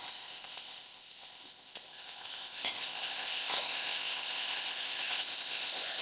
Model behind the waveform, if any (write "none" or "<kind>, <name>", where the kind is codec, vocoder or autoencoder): codec, ZipCodec